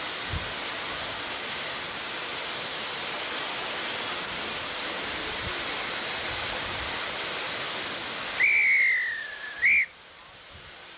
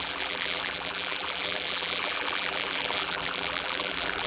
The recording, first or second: first